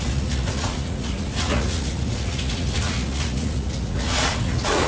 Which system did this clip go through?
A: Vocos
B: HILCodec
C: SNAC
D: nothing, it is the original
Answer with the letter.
A